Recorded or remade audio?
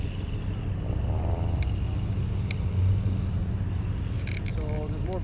recorded